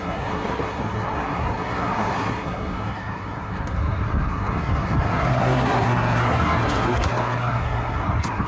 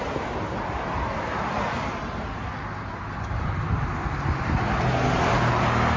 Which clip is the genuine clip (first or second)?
second